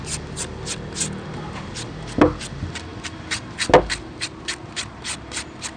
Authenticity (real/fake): real